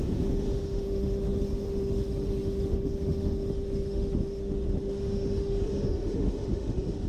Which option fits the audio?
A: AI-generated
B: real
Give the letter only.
A